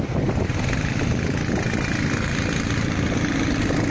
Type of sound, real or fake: real